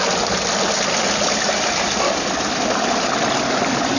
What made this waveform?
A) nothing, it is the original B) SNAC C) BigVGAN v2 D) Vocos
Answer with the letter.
A